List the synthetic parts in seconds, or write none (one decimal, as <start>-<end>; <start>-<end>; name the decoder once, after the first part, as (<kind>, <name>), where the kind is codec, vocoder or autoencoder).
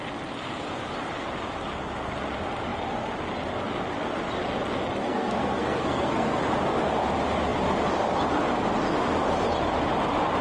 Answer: 5.0-6.4 (codec, SNAC)